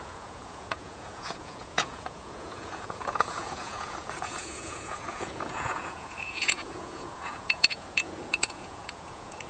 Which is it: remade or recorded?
remade